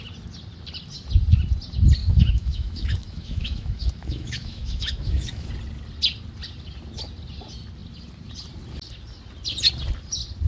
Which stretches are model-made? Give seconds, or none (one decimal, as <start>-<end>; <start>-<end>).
2.0-5.5